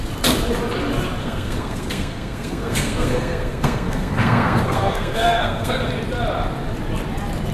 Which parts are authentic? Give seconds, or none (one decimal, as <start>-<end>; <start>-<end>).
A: 0.0-1.2; 5.7-7.5